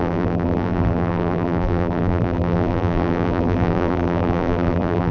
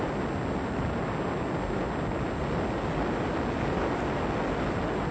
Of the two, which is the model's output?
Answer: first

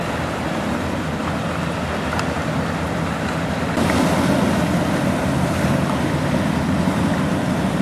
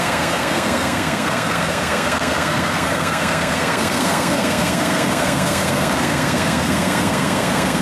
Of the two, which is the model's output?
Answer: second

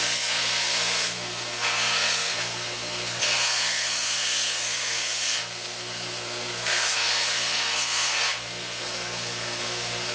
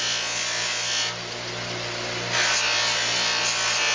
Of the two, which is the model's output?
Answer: first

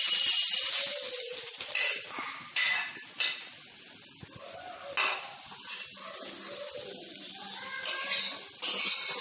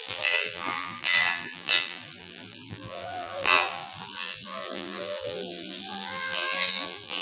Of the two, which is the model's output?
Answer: second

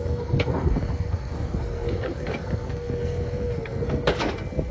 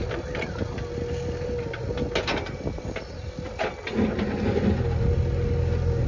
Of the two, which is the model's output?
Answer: first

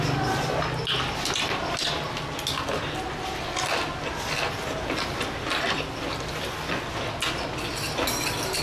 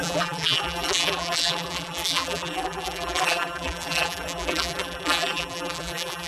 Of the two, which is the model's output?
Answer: second